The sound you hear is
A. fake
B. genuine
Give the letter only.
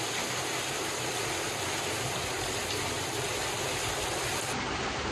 B